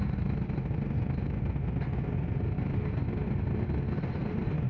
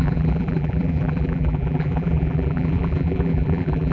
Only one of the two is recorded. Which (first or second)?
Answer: first